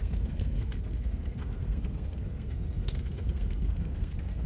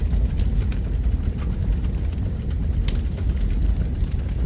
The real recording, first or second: second